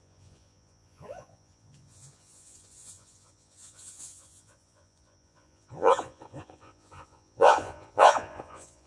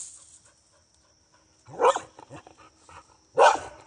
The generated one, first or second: first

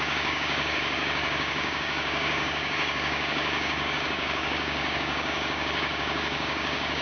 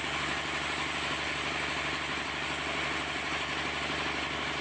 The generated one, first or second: first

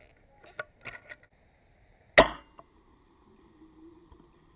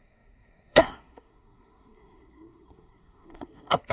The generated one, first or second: second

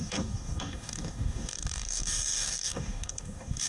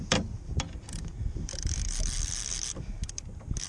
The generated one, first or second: first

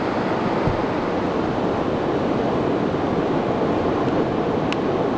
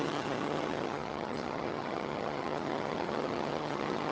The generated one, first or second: second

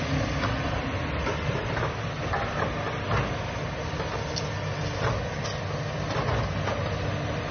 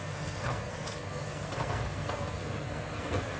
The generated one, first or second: second